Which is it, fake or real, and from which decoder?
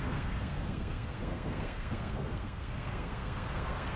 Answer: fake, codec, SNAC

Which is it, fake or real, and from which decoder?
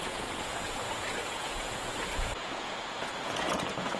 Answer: fake, vocoder, Vocos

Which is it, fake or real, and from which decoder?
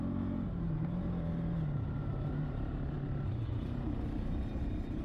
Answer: fake, vocoder, BigVGAN v2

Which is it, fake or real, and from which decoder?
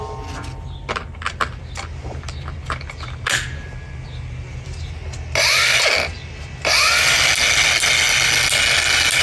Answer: real